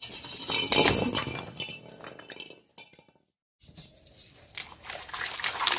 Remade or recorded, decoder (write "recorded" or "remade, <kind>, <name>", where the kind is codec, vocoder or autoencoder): recorded